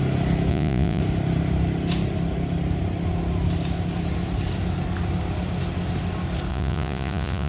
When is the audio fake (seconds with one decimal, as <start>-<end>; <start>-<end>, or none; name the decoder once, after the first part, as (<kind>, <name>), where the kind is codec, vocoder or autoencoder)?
0.5-1.0 (vocoder, Vocos); 6.5-7.5